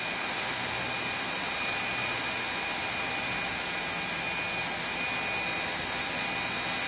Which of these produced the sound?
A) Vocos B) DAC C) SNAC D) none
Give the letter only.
D